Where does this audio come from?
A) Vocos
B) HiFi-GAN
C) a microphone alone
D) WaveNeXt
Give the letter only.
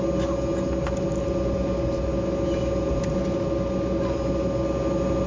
C